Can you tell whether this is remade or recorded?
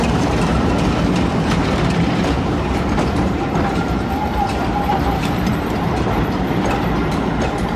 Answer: remade